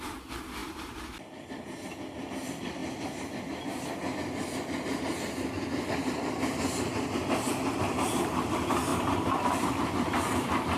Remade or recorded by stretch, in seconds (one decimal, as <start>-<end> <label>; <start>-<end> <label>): 0.0-2.8 remade; 2.8-7.7 recorded; 7.7-10.8 remade